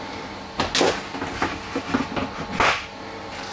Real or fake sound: real